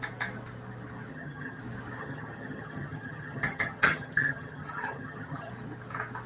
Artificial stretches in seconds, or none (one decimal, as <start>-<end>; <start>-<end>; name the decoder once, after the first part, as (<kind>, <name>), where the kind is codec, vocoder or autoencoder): 1.1-1.6 (vocoder, HiFi-GAN); 2.0-5.5